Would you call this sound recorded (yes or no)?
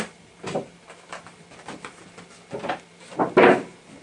yes